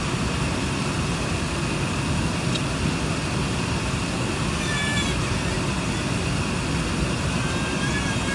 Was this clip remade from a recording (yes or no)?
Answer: yes